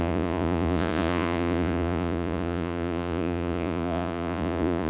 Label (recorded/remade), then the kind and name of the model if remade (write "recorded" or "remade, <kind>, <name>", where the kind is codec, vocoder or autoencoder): remade, vocoder, Vocos